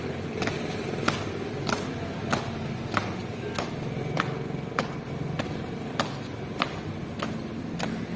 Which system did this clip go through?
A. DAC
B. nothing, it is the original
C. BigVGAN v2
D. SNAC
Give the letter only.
B